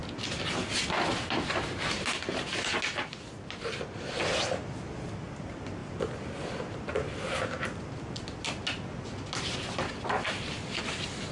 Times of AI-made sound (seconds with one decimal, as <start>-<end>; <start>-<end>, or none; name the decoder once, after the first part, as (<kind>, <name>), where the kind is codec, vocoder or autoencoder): none